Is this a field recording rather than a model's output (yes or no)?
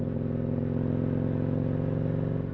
yes